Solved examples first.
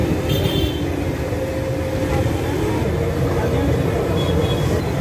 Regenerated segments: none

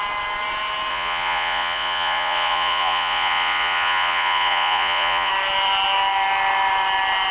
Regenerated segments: 0.9-5.3

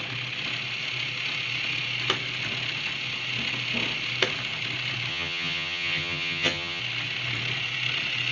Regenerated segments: 5.1-6.8

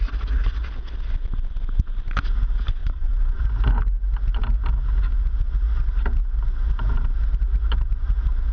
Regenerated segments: 2.8-3.4